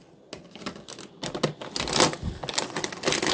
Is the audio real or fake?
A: real